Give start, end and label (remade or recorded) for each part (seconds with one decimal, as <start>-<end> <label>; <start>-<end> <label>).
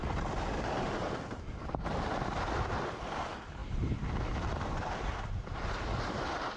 0.0-6.6 recorded